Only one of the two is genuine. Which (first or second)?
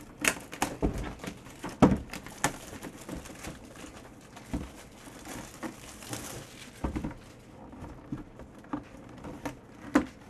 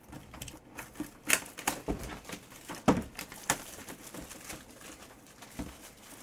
first